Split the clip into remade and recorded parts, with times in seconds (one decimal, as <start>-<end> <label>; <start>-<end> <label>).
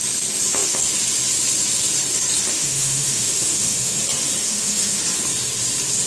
0.0-2.5 recorded; 2.5-4.0 remade; 4.0-4.4 recorded; 4.4-5.0 remade; 5.0-6.1 recorded